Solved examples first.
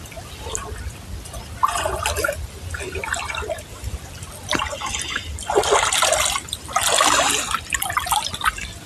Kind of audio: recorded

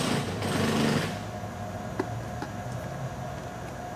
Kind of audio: recorded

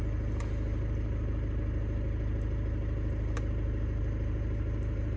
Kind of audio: recorded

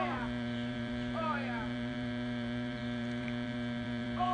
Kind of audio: remade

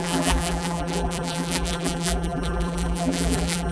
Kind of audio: remade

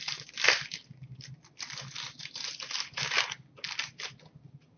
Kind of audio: recorded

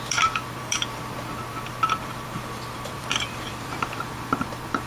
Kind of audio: remade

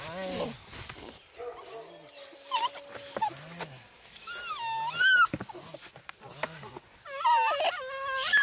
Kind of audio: recorded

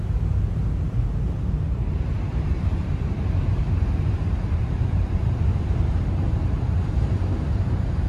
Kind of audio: remade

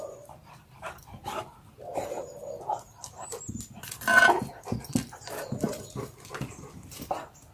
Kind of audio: recorded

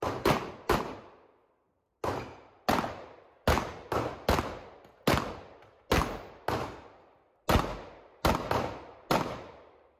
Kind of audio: recorded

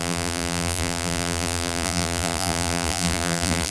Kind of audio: remade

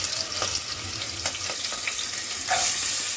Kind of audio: recorded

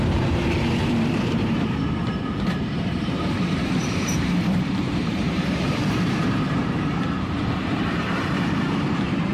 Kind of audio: remade